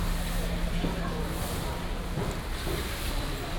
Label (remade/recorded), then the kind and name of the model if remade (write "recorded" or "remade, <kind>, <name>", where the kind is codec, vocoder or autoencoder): recorded